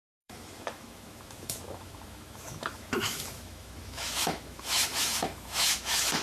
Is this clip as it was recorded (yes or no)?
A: no